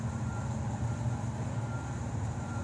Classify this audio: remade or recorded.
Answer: remade